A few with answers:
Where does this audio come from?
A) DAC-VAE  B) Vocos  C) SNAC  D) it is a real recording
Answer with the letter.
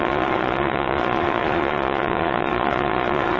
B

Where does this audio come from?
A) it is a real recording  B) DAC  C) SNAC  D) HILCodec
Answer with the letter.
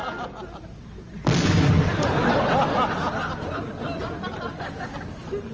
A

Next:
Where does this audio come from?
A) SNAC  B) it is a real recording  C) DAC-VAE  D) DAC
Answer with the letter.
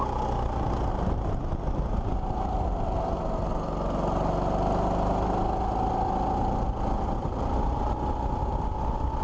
B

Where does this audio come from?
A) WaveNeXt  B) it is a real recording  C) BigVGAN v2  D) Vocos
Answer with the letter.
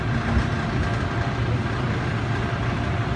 B